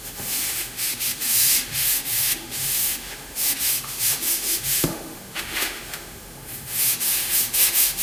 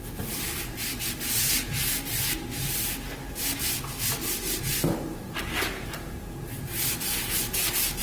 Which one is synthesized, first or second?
first